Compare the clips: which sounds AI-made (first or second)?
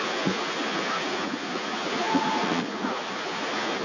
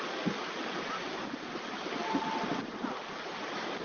first